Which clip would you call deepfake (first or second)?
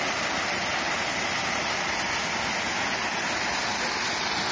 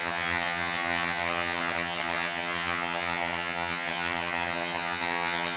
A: second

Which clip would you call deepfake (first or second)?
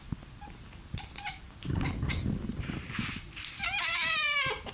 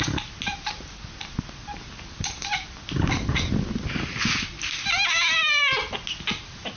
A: first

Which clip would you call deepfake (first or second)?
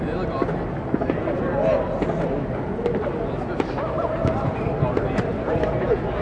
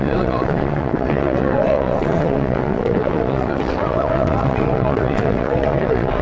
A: second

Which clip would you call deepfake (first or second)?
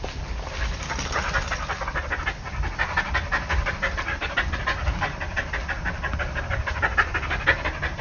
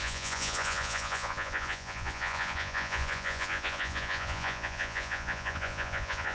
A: second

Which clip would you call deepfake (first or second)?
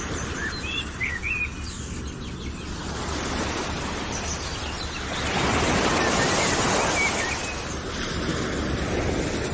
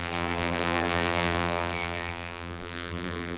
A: second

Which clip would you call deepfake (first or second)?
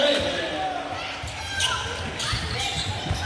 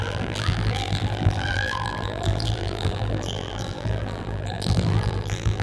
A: second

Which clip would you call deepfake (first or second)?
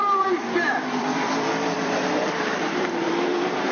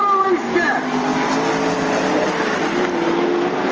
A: first